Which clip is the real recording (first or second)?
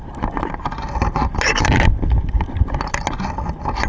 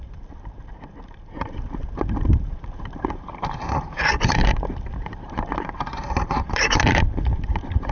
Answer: first